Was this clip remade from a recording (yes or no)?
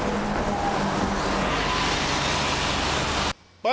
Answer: no